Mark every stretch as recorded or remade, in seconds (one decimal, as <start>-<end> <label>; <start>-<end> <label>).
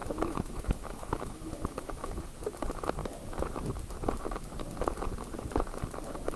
0.0-2.2 remade; 2.2-6.4 recorded